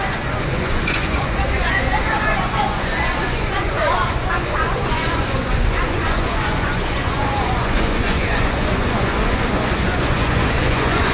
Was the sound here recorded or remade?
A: remade